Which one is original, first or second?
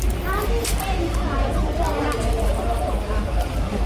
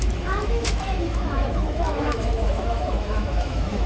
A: first